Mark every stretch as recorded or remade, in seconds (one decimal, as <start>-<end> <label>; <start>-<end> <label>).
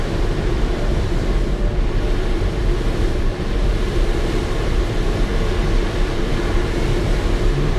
0.0-0.9 remade; 0.9-3.1 recorded; 3.1-5.3 remade; 5.3-6.1 recorded; 6.1-7.8 remade